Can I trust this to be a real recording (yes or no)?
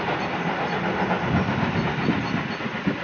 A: yes